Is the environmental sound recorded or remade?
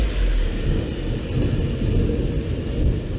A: recorded